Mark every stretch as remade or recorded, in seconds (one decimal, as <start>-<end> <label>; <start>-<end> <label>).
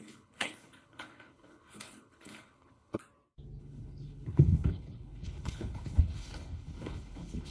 0.0-3.0 remade; 3.0-3.6 recorded; 3.6-7.5 remade